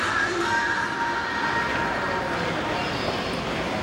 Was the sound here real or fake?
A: real